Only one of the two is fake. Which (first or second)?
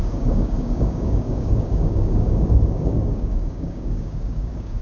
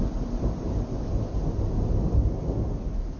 first